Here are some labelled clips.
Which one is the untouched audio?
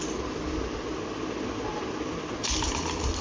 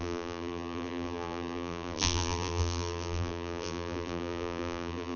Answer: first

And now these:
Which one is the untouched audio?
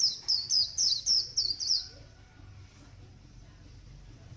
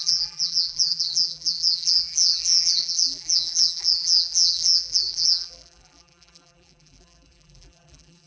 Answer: first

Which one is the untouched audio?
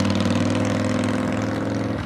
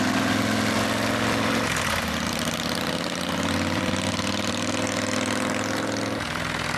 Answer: first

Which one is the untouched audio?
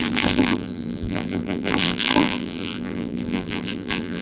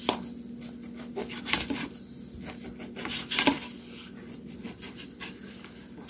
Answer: second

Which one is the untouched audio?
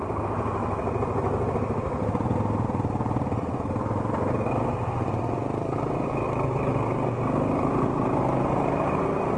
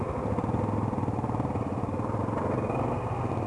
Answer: second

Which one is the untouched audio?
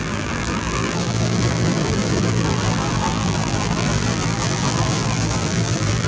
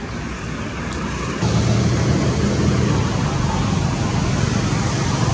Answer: second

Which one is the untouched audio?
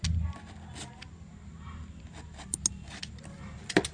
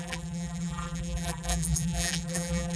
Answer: first